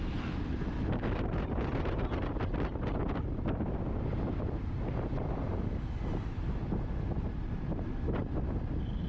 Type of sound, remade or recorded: recorded